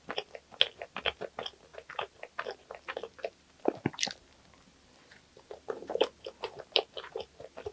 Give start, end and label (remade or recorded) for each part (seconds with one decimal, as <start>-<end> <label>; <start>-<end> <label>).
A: 0.0-7.7 recorded